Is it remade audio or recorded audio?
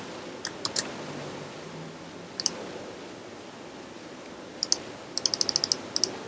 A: recorded